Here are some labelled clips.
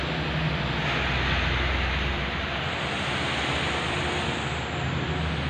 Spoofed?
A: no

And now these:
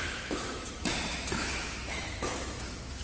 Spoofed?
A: yes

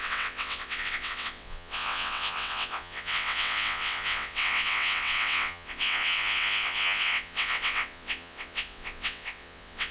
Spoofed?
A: yes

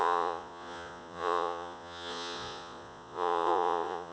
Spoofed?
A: yes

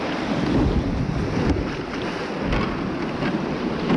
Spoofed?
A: no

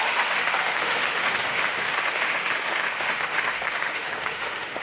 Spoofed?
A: yes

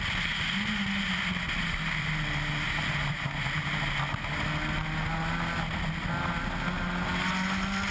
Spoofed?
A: no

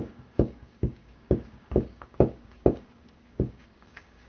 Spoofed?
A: yes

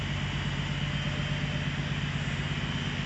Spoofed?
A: no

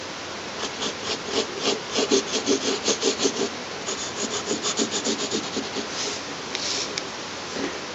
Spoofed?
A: no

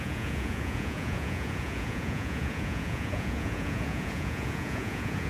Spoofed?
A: yes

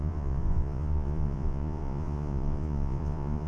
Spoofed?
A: yes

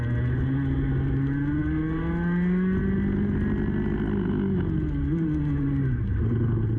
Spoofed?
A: no